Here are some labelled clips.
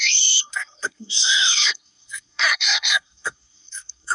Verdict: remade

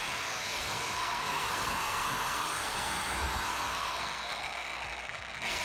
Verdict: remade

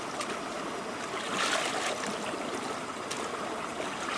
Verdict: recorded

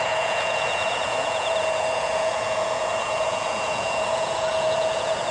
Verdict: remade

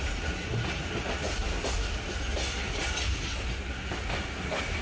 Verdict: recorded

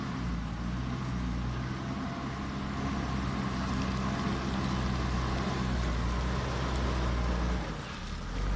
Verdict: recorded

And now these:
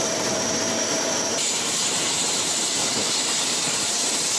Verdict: remade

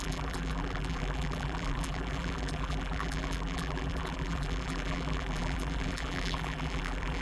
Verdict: remade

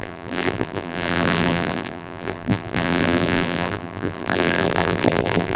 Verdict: remade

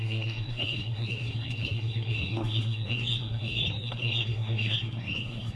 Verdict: remade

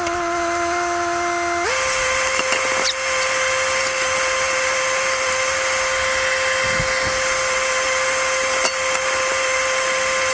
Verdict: recorded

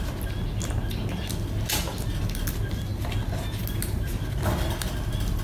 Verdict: recorded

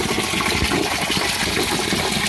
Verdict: recorded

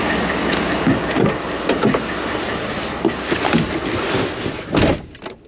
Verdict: recorded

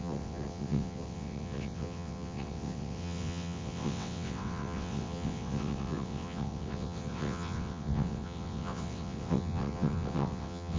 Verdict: remade